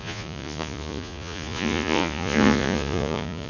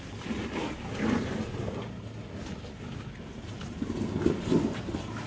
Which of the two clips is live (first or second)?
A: second